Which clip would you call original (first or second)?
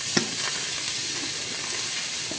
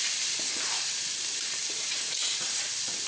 first